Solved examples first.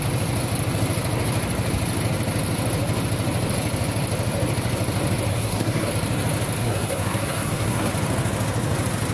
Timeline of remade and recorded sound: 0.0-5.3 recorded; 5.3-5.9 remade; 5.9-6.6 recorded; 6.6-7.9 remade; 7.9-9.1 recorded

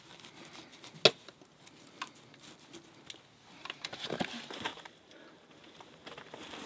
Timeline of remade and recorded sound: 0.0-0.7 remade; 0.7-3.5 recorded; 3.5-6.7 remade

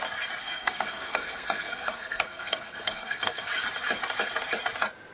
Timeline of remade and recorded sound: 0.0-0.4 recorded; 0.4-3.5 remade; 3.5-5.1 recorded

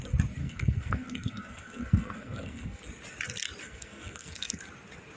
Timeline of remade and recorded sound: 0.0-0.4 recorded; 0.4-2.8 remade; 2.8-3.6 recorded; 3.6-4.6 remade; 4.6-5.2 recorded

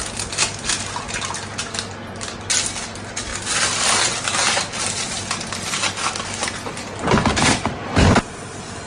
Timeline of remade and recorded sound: 0.0-8.9 recorded